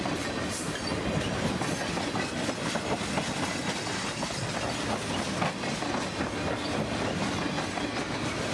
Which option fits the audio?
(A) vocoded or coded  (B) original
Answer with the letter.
B